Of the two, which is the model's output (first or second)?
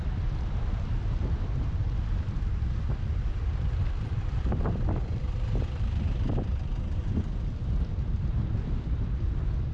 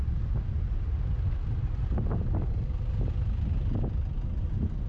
first